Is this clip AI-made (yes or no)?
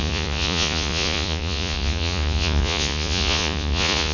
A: yes